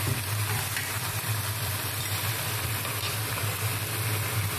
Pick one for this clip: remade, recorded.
remade